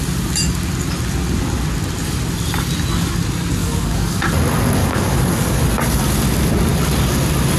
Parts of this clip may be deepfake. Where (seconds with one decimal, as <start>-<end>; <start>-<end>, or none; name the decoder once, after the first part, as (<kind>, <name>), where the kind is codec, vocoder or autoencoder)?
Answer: 3.6-4.2 (codec, DAC); 4.8-5.6